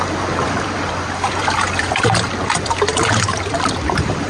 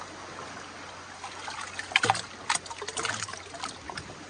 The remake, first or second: first